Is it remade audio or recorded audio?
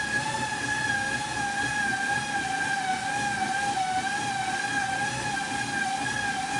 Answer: recorded